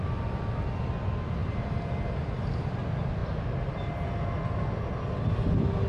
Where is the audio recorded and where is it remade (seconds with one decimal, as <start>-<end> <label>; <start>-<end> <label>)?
0.0-5.9 recorded